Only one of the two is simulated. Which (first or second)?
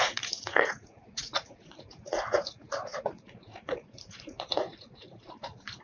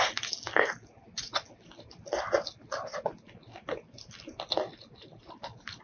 first